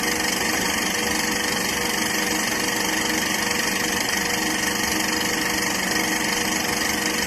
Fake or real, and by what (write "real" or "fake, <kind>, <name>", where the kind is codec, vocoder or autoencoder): real